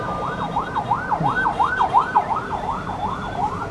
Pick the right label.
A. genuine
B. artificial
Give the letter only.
B